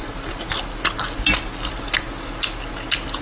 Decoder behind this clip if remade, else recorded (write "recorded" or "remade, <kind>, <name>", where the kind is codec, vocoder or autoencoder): recorded